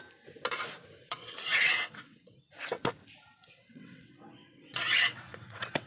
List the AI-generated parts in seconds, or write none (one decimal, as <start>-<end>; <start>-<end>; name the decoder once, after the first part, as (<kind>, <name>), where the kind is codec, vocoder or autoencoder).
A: 1.0-2.4 (vocoder, WaveNeXt); 3.4-5.9